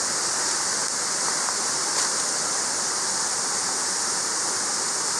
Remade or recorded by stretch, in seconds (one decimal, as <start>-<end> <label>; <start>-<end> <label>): 0.0-5.2 recorded